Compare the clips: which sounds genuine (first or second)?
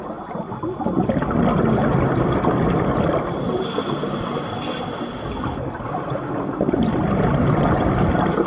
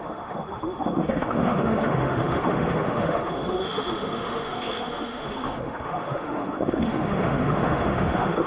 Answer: first